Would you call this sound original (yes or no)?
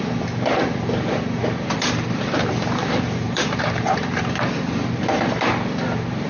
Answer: no